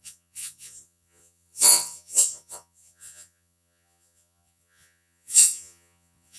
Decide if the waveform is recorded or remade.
remade